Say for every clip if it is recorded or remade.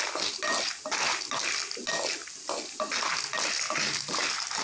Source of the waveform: recorded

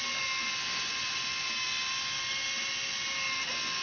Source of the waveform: recorded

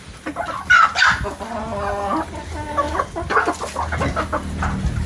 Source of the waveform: recorded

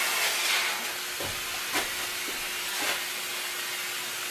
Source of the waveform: recorded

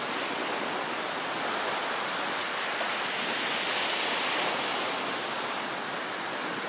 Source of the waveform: recorded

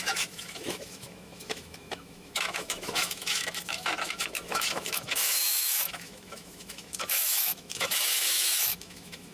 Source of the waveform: remade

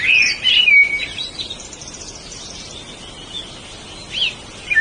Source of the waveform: recorded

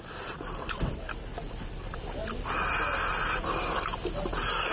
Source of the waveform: recorded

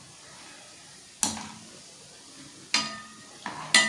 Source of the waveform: recorded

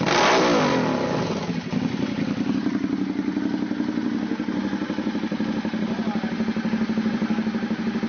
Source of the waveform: recorded